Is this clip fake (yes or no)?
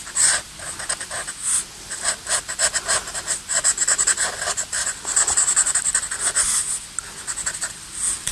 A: no